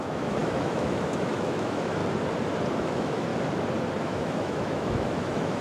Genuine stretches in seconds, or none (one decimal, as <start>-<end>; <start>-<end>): 2.0-2.8; 3.3-4.0